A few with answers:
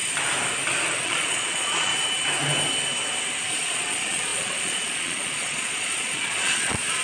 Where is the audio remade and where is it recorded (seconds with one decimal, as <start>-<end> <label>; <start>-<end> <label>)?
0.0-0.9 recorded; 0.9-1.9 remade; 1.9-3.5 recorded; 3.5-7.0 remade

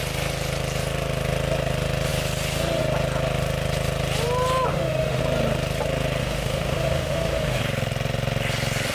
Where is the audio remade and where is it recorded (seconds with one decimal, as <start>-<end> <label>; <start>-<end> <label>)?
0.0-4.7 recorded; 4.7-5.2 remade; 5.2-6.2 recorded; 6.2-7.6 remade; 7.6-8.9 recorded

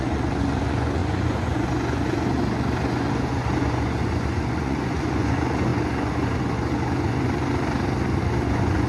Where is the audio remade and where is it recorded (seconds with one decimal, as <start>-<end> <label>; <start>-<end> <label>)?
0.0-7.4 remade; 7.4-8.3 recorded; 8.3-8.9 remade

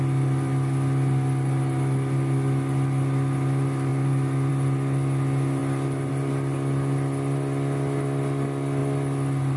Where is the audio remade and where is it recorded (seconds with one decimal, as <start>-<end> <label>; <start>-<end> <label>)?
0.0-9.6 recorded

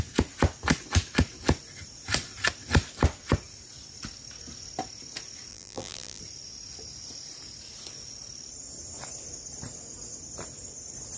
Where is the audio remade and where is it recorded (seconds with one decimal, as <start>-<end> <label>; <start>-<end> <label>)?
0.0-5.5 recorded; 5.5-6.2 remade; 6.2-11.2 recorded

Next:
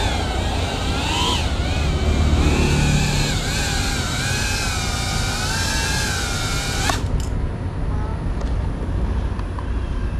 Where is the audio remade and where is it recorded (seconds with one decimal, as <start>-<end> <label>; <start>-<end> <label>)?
0.0-10.2 recorded

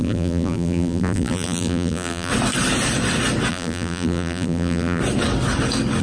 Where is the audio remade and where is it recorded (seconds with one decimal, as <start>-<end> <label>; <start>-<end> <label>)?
0.0-2.3 remade; 2.3-3.5 recorded; 3.5-5.0 remade; 5.0-6.0 recorded

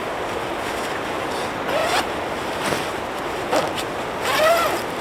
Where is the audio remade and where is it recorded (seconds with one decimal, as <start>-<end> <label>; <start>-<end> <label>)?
0.0-5.0 recorded